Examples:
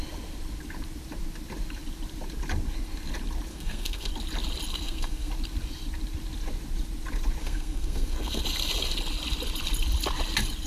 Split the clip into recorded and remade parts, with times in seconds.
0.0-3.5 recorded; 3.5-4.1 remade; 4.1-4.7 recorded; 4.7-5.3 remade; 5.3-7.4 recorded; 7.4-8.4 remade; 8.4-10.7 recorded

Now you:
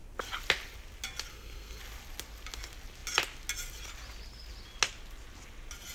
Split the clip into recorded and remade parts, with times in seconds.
0.0-1.3 recorded; 1.3-1.8 remade; 1.8-5.9 recorded